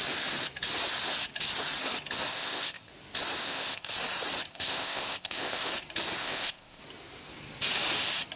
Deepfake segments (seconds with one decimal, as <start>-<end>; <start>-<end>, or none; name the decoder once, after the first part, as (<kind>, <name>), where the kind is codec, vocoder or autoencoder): 2.3-2.9 (codec, ZipCodec); 3.4-3.9; 4.5-5.7; 6.2-6.8